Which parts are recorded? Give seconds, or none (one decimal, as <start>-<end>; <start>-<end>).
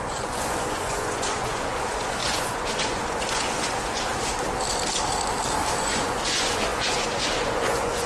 4.1-5.8